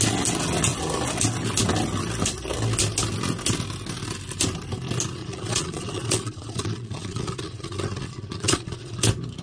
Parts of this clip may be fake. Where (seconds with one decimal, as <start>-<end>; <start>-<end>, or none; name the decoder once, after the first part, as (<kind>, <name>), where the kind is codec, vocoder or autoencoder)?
5.2-9.0 (vocoder, Vocos)